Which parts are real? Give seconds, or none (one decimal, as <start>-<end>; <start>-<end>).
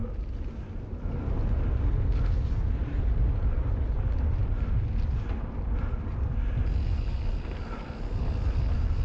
0.0-9.0